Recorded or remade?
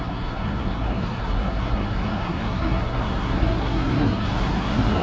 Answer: remade